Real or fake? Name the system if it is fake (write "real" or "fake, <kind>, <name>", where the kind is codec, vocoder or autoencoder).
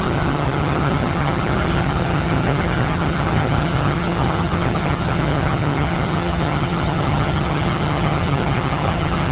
fake, vocoder, HiFi-GAN